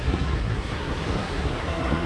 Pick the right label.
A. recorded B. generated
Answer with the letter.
B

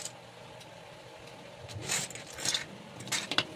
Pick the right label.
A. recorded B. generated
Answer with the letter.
A